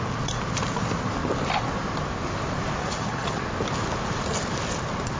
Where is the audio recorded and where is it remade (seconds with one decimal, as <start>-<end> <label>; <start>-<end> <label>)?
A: 0.0-2.8 recorded; 2.8-3.4 remade; 3.4-5.2 recorded